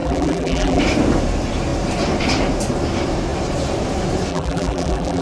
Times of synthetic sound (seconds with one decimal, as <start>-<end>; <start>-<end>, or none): 0.0-0.8; 4.3-5.2